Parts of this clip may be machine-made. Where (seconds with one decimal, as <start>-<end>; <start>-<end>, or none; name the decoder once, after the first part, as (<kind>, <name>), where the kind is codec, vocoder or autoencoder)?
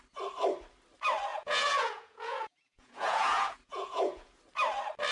1.3-4.4 (vocoder, Vocos)